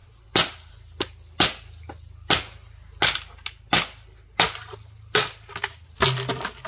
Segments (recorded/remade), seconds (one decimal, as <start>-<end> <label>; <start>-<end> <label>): 0.0-6.7 recorded